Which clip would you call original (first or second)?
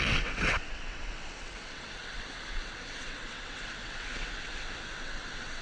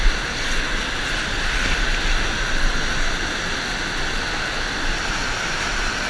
second